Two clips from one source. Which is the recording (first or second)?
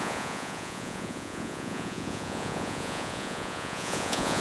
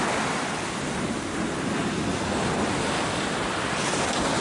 second